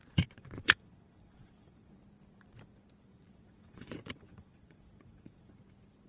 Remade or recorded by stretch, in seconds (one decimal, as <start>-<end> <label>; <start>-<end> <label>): 0.0-1.9 remade; 1.9-3.1 recorded; 3.1-5.5 remade; 5.5-6.1 recorded